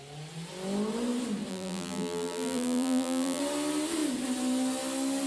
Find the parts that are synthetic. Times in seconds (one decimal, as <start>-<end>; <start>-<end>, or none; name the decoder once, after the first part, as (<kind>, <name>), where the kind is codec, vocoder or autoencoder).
1.5-3.4 (vocoder, BigVGAN v2)